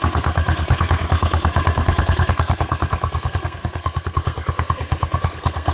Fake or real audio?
fake